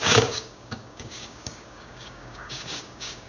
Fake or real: fake